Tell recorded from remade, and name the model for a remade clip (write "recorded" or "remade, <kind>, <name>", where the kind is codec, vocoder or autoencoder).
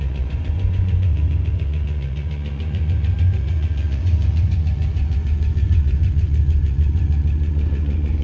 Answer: remade, vocoder, Vocos